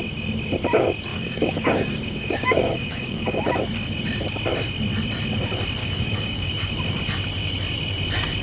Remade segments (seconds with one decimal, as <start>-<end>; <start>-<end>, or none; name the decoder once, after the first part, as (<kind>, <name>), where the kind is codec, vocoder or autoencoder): 1.1-3.5 (codec, DAC); 5.8-6.5